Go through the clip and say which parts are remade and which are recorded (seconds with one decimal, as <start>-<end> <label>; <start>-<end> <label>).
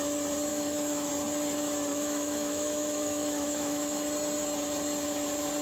0.0-0.5 recorded; 0.5-1.1 remade; 1.1-1.9 recorded; 1.9-4.0 remade; 4.0-5.6 recorded